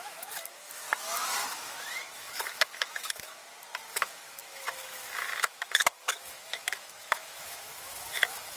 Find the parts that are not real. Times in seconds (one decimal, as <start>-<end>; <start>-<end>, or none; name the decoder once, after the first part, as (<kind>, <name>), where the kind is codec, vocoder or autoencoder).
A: 0.0-0.8 (autoencoder, DAC-VAE); 1.5-3.4; 3.9-8.6